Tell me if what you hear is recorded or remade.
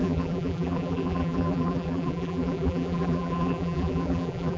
remade